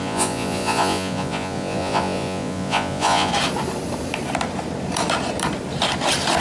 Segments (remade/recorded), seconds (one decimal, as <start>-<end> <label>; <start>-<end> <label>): 0.0-3.3 remade; 3.3-6.4 recorded